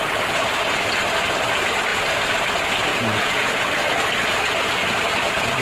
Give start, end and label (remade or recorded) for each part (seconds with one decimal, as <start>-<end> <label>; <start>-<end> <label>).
0.0-2.9 recorded; 2.9-3.6 remade; 3.6-5.6 recorded